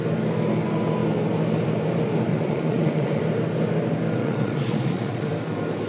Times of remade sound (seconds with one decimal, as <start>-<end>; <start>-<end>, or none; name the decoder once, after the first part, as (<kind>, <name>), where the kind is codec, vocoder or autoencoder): 2.3-3.2 (vocoder, Vocos); 4.2-5.3